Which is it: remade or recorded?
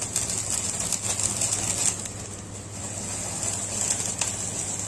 recorded